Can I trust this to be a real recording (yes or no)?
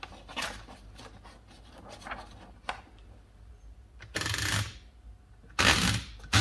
yes